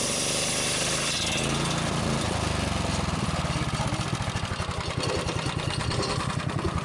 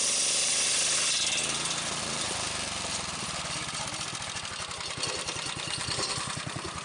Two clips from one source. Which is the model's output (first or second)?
second